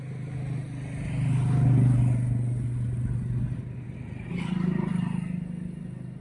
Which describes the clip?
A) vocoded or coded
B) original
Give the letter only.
B